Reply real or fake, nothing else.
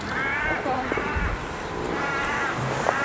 real